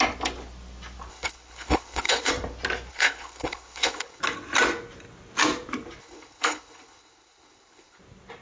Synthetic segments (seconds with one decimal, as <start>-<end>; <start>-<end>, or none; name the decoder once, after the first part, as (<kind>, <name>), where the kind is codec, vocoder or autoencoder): 1.1-2.3 (codec, HILCodec); 2.9-4.2; 6.0-8.0

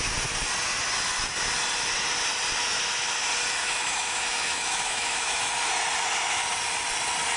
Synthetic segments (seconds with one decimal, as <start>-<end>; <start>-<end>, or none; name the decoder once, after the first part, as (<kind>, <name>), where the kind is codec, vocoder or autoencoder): 3.6-5.5 (autoencoder, DAC-VAE)

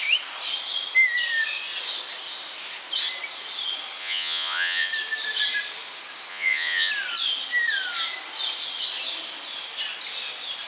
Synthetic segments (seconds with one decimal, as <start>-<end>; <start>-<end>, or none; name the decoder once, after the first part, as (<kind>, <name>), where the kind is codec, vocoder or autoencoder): 4.0-4.9 (vocoder, Vocos); 6.3-6.9

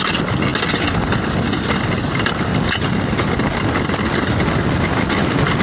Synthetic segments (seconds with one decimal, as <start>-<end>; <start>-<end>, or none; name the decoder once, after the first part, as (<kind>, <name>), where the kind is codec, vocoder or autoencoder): none